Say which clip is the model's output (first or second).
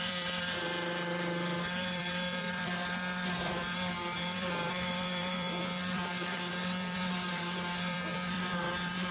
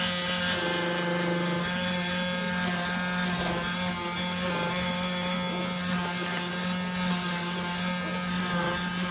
first